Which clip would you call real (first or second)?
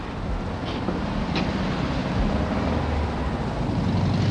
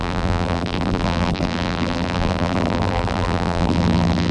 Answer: first